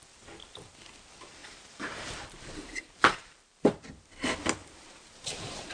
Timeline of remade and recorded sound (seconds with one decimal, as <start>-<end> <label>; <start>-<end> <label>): 0.0-1.4 recorded; 1.4-3.9 remade; 3.9-4.6 recorded; 4.6-5.7 remade